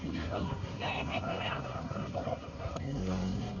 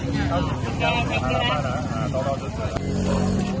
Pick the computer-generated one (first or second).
first